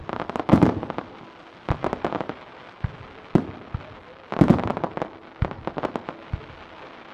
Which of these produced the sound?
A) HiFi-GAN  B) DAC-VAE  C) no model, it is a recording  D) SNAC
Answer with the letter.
C